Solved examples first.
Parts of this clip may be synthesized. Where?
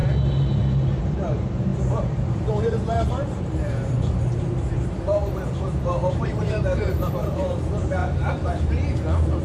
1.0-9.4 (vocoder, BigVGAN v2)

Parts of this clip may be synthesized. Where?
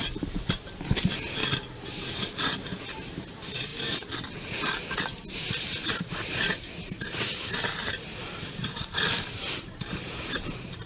0.0-1.4 (vocoder, BigVGAN v2); 2.8-3.7; 6.0-10.9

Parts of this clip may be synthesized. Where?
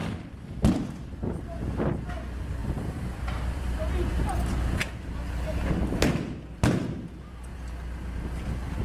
0.0-0.9 (vocoder, BigVGAN v2); 2.6-4.3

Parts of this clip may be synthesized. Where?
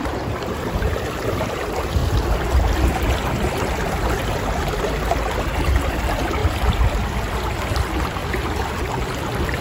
0.0-9.6 (vocoder, BigVGAN v2)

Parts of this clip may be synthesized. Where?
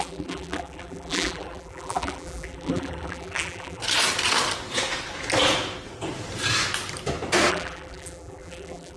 0.0-3.8 (vocoder, BigVGAN v2); 7.5-9.0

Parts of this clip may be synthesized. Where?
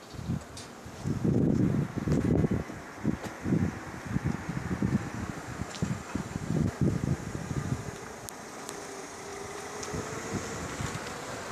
9.3-10.0 (vocoder, BigVGAN v2)